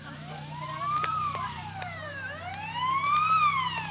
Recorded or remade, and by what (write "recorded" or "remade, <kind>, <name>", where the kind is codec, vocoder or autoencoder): remade, vocoder, BigVGAN v2